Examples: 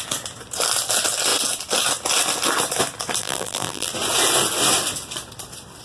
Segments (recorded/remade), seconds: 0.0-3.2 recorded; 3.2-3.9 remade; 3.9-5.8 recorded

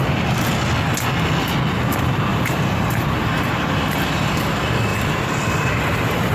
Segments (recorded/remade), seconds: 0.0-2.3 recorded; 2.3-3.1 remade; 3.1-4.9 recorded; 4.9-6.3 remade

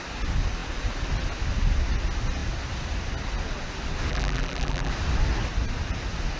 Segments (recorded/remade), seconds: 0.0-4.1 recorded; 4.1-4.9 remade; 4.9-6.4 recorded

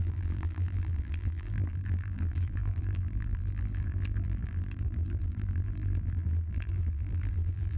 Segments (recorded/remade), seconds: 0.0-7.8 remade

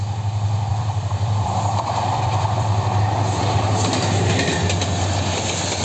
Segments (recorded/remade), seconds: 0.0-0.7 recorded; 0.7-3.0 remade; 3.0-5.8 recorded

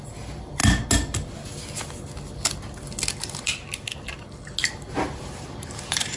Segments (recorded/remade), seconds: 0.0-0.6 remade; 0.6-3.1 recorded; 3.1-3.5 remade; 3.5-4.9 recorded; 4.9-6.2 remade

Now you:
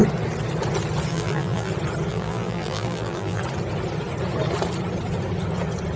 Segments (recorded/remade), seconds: 0.0-1.1 recorded; 1.1-1.7 remade; 1.7-2.1 recorded; 2.1-3.4 remade; 3.4-6.0 recorded